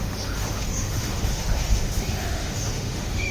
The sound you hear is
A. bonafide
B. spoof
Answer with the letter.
B